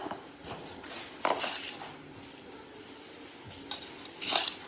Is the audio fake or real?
real